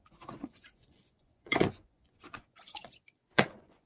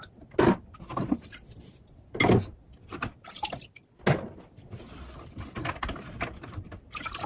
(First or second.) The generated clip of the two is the first